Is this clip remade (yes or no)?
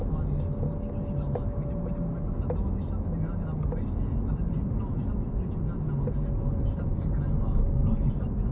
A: no